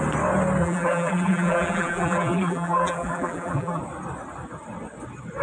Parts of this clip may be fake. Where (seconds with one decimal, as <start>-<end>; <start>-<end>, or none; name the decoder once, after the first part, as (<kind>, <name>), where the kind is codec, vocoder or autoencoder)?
0.6-3.8 (vocoder, BigVGAN v2)